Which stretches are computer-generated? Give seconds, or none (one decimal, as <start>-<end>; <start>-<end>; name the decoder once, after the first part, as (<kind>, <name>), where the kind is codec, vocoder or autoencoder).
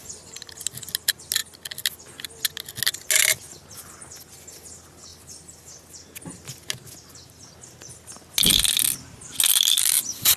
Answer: none